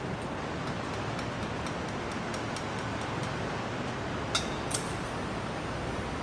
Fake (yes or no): no